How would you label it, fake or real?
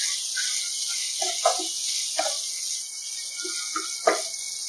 real